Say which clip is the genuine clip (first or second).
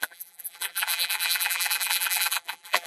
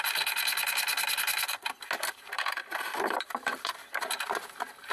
second